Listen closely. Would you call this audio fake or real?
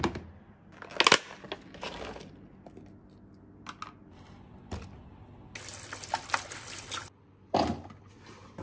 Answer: real